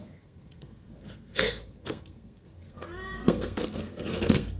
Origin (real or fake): fake